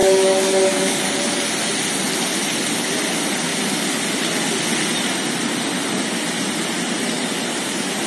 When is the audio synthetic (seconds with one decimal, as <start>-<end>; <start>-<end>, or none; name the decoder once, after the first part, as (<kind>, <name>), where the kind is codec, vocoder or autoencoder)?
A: 0.0-1.1 (codec, DAC)